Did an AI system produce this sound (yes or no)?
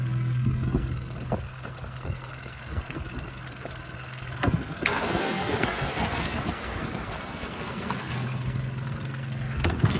yes